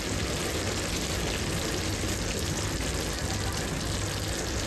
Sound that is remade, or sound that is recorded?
recorded